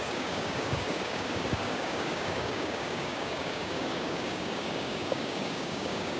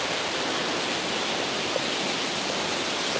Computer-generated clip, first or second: first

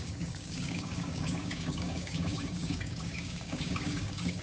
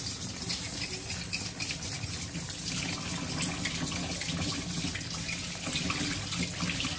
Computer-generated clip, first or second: first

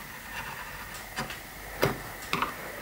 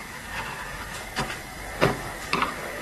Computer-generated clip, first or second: second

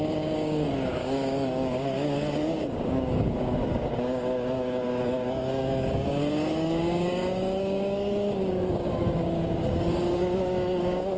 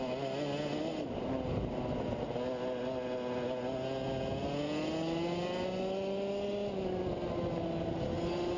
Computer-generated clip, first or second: first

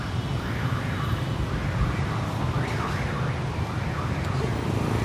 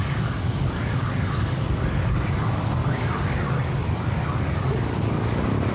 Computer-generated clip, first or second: second